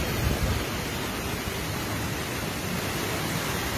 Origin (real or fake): real